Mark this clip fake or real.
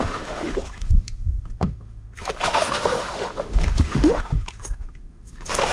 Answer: fake